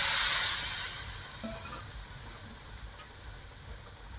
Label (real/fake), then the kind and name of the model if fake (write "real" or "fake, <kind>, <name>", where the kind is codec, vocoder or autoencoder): real